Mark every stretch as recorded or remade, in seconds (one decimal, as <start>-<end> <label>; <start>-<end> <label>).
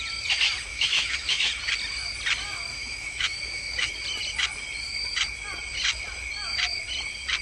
0.0-0.7 recorded; 0.7-1.5 remade; 1.5-2.7 recorded; 2.7-3.9 remade; 3.9-7.4 recorded